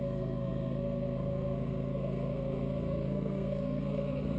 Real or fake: fake